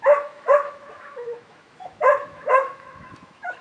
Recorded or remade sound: remade